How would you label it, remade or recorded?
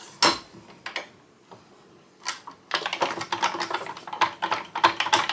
recorded